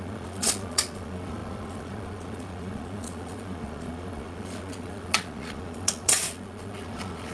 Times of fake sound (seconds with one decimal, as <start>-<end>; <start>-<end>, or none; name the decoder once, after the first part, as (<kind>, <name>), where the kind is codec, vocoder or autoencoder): 0.0-7.3 (vocoder, Vocos)